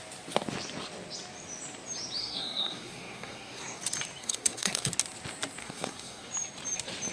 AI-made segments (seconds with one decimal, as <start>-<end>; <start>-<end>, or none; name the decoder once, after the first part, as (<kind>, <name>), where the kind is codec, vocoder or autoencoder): 2.2-3.8 (codec, SNAC); 4.2-4.9; 5.6-6.3